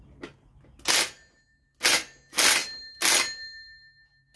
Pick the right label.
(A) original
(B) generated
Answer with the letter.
A